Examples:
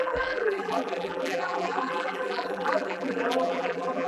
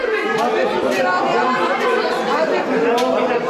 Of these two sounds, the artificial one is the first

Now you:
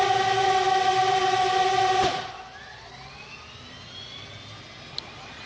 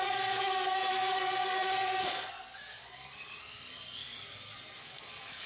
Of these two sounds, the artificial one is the second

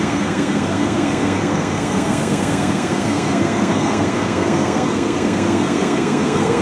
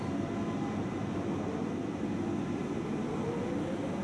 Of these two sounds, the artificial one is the first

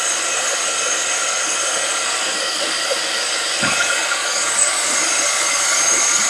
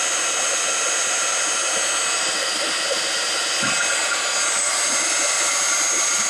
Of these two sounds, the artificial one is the first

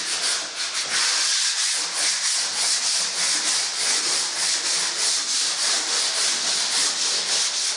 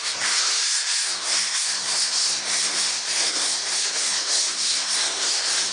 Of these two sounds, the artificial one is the second